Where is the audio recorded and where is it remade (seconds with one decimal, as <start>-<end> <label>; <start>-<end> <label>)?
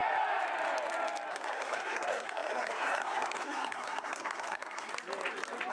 0.0-1.3 recorded; 1.3-4.9 remade; 4.9-5.7 recorded